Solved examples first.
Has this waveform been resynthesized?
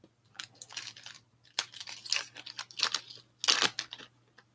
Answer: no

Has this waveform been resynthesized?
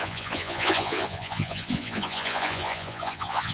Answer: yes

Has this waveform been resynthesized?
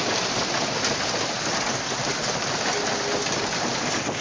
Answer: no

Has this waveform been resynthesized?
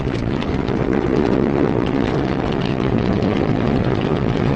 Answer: yes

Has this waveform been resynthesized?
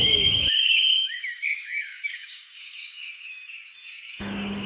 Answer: yes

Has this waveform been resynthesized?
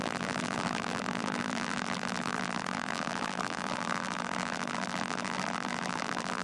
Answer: yes